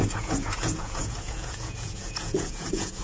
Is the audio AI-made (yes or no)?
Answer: yes